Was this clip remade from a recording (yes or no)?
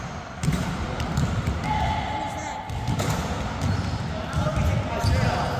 no